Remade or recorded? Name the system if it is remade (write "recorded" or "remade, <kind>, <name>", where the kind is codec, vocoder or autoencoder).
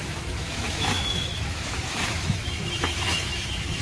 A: remade, autoencoder, DAC-VAE